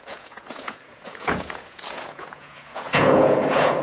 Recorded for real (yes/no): no